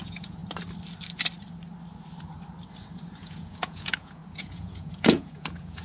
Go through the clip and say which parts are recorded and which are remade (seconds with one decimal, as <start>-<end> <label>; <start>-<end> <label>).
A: 0.0-0.4 remade; 0.4-3.2 recorded; 3.2-5.8 remade